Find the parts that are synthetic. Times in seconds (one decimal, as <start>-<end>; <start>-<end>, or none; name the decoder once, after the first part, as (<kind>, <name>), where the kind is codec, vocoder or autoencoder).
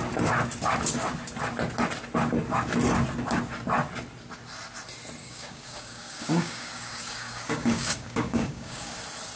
5.2-8.9 (codec, DAC)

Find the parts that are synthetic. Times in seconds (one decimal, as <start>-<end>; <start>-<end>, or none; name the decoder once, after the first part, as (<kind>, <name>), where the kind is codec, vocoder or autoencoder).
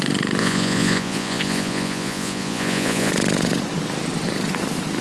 0.4-3.1 (vocoder, Vocos)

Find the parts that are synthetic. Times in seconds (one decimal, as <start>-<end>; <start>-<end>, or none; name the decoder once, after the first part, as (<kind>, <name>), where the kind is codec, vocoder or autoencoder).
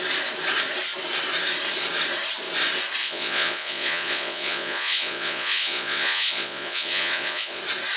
3.0-7.6 (vocoder, Vocos)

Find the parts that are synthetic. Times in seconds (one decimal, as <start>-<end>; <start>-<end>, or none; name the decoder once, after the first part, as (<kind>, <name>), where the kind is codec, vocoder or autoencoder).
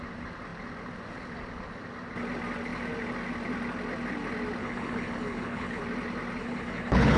4.6-5.8 (codec, HILCodec); 6.4-7.2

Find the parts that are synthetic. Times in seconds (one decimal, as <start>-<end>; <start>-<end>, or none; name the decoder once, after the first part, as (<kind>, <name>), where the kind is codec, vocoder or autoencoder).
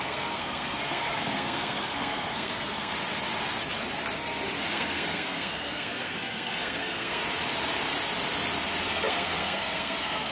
0.0-2.9 (codec, SNAC); 4.7-7.2; 8.8-10.3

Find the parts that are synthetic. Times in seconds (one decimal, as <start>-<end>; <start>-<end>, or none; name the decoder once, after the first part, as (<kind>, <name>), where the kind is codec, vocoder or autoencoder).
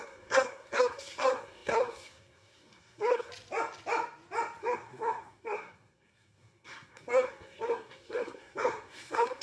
0.0-3.3 (codec, SNAC); 4.6-9.4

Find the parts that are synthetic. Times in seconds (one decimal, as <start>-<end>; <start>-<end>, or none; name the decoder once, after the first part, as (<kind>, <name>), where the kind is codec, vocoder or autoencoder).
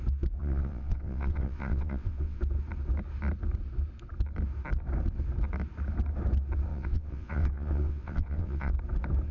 0.4-2.4 (vocoder, WaveNeXt); 6.7-8.7